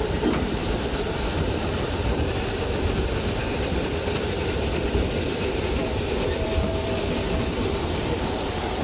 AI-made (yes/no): yes